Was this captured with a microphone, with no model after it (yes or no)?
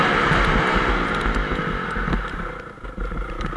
yes